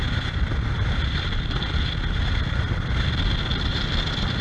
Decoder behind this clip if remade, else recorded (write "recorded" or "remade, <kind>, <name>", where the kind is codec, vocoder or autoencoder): remade, vocoder, BigVGAN v2